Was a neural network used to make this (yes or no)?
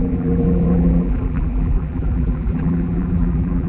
yes